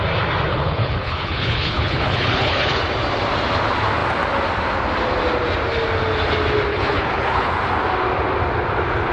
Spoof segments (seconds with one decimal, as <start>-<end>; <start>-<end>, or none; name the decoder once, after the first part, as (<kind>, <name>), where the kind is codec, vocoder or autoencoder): 0.5-2.8 (codec, HILCodec); 6.7-7.5

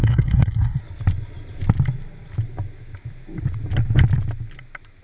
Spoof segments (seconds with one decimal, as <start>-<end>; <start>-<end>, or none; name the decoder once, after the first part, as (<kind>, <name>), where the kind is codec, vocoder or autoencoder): 0.0-0.8 (codec, SNAC)

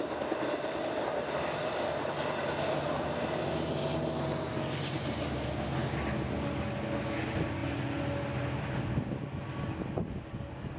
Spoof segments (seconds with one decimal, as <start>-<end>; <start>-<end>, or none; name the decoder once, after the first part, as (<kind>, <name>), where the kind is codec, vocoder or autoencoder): none

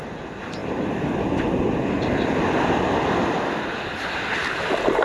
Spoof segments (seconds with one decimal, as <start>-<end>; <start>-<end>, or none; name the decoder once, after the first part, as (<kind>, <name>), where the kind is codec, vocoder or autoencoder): none

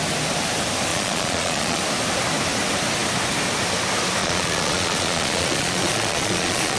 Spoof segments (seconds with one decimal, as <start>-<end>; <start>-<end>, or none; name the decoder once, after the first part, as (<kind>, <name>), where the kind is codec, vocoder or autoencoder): 0.9-1.8 (vocoder, Vocos); 4.2-6.8